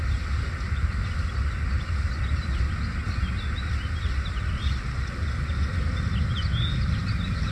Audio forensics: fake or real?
real